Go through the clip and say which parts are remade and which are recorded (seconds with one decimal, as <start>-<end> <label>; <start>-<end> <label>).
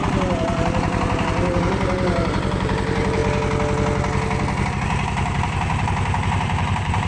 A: 0.0-3.2 remade; 3.2-4.7 recorded; 4.7-7.1 remade